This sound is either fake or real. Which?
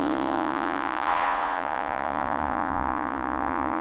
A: fake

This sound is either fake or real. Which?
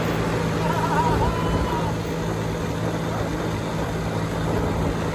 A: real